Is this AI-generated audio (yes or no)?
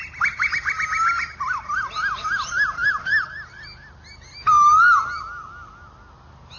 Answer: no